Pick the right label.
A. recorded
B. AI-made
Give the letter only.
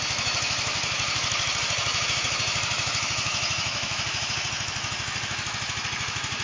B